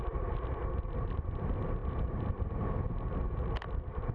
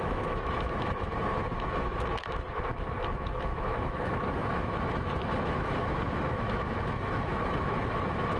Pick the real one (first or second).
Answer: first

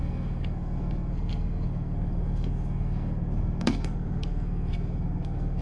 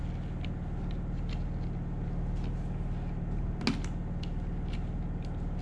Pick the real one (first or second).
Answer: second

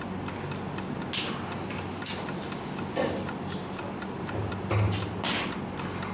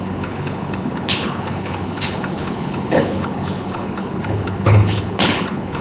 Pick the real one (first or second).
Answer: first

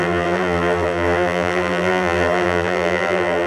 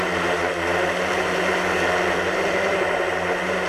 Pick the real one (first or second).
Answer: second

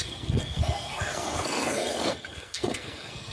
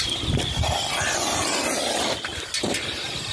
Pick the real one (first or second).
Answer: second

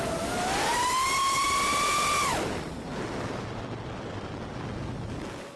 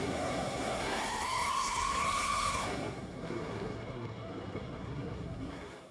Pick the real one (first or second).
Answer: first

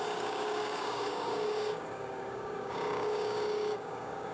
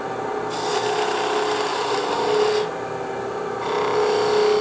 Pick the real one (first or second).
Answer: second